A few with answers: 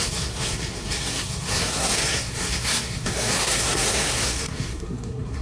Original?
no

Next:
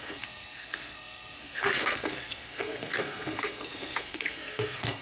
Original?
no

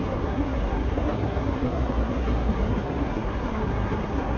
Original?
no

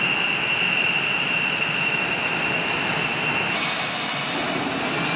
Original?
yes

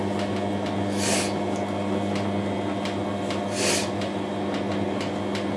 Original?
yes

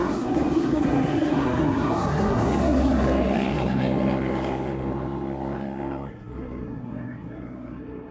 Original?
no